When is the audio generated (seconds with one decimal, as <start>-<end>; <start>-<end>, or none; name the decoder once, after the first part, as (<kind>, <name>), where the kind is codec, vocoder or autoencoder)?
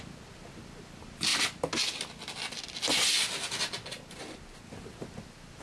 0.0-1.3 (vocoder, BigVGAN v2); 4.7-5.6